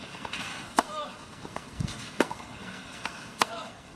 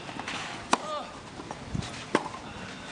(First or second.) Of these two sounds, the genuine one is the second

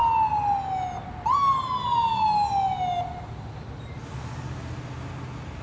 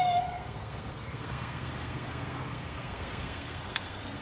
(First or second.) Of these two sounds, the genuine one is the first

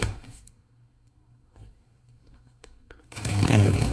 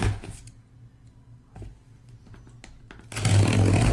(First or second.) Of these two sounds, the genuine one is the second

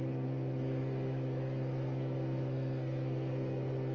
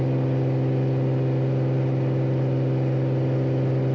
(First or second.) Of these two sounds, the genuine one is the second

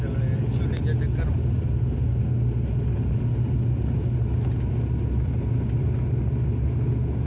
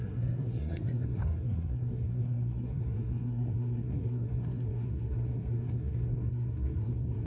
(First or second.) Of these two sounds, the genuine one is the first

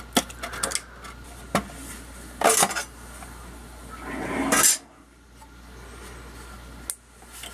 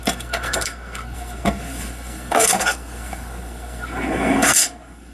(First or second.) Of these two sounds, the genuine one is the first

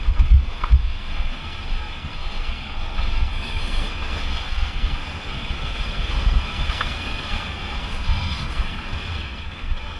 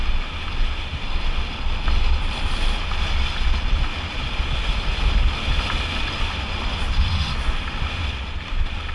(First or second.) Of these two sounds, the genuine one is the second